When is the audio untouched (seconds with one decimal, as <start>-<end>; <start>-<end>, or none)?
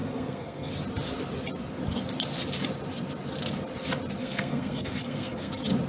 0.7-4.2; 5.5-5.9